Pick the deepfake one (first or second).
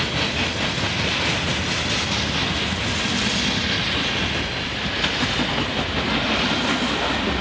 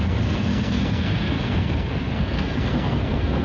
second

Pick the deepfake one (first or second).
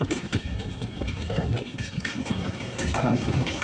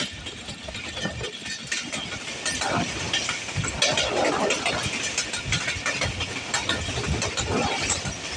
first